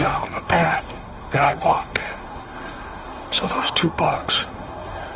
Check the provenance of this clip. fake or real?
fake